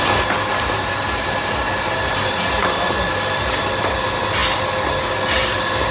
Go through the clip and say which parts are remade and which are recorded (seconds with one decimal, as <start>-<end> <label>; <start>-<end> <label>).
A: 0.0-5.9 recorded

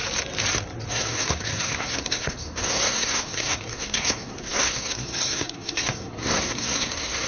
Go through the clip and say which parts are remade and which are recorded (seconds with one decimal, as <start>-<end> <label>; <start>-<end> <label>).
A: 0.0-0.9 recorded; 0.9-7.3 remade